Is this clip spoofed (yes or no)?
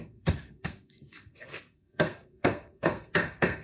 yes